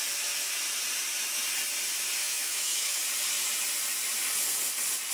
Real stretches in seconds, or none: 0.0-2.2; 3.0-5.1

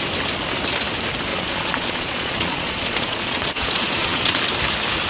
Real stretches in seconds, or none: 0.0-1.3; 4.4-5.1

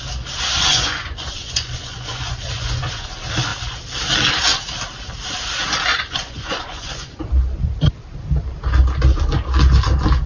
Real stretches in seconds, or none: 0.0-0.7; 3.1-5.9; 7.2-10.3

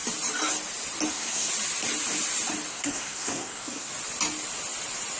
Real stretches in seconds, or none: 0.0-1.1; 1.5-2.7; 3.9-5.2